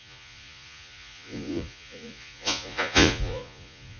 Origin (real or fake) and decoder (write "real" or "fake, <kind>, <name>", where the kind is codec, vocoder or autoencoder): fake, vocoder, Vocos